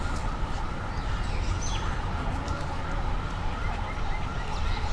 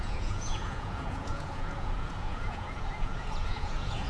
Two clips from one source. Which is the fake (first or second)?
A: second